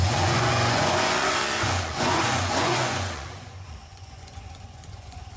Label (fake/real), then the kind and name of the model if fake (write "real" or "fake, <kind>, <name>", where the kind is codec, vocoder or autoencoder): fake, vocoder, Vocos